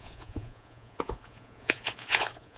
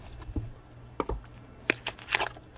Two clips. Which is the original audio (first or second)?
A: second